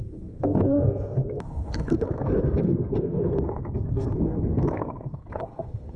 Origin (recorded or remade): remade